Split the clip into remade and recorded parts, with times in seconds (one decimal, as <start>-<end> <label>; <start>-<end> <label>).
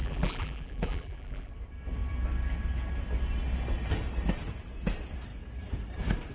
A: 0.0-1.5 remade; 1.5-6.3 recorded